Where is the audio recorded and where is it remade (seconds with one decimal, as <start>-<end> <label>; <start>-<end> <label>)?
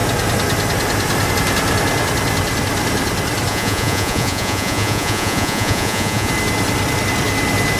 0.0-3.5 recorded; 3.5-6.3 remade; 6.3-7.8 recorded